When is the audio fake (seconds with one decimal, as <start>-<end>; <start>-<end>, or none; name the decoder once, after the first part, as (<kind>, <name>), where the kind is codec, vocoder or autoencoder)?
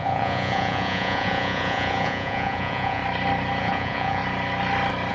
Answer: 0.0-3.0 (vocoder, Vocos); 3.6-4.2